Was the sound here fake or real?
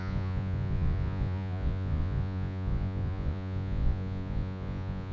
fake